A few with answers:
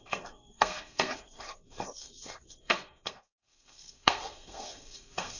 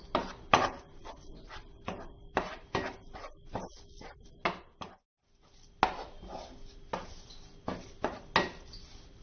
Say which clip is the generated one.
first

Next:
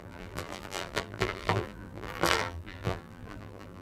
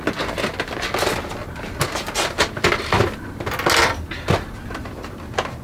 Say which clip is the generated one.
first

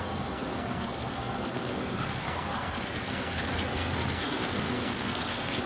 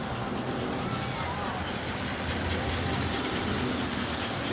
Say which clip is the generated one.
first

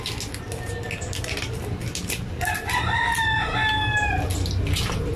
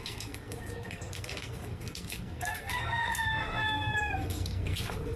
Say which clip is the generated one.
second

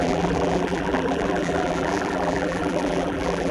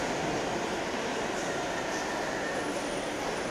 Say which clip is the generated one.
first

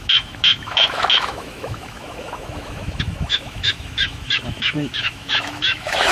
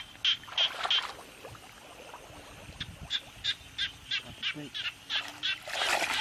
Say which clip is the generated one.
first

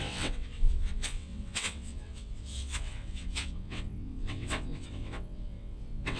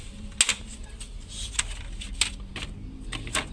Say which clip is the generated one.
first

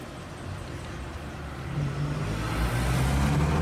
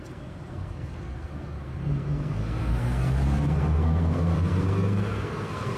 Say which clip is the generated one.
second